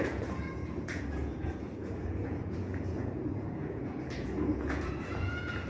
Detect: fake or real fake